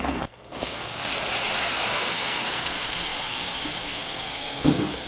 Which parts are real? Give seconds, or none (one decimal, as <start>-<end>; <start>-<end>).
1.1-1.6